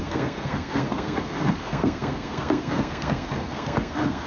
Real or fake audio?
fake